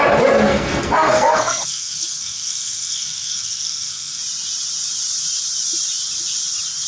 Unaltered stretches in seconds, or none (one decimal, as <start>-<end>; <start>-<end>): 0.0-0.5; 4.2-6.9